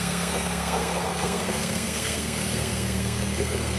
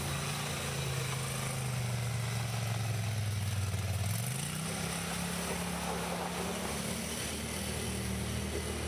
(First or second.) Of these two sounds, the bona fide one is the second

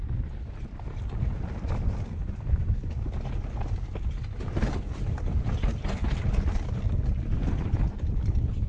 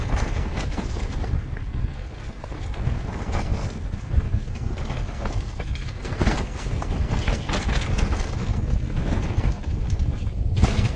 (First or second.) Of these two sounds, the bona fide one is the first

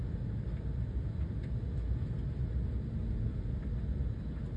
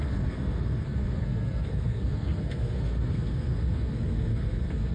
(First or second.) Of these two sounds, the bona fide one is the first